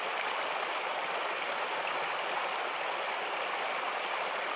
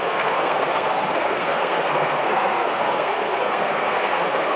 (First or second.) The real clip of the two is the first